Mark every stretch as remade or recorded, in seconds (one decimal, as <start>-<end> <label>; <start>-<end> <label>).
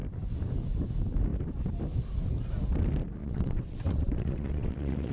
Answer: 0.0-3.2 recorded; 3.2-5.1 remade